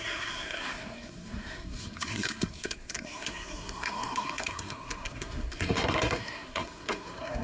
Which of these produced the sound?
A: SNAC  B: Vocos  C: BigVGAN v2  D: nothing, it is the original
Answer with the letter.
A